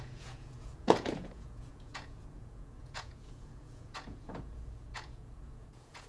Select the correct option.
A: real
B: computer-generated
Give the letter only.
B